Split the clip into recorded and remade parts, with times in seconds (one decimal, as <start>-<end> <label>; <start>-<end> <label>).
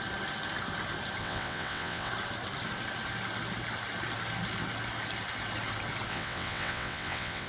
0.0-1.2 recorded; 1.2-2.1 remade; 2.1-6.1 recorded; 6.1-7.5 remade